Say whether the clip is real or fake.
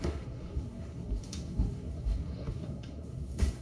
fake